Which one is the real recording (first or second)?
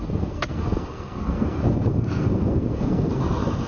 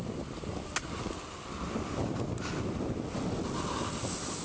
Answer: second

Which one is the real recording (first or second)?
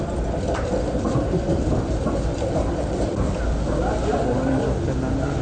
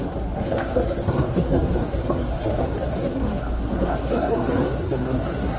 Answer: first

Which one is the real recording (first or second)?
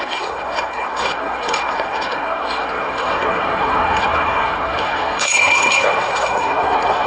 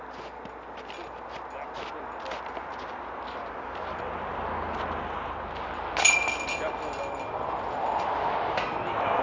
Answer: second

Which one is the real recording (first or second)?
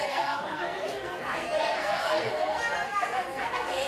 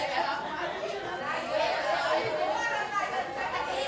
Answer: second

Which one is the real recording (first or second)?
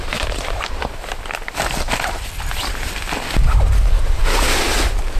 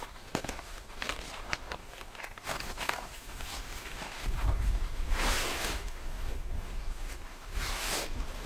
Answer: first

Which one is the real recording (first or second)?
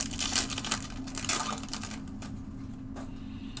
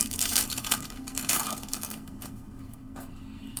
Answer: first